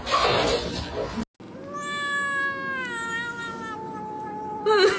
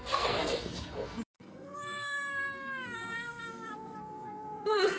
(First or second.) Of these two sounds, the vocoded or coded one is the second